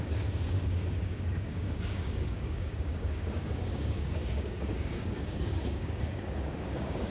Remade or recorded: remade